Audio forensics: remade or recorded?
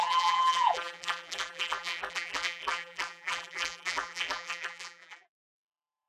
remade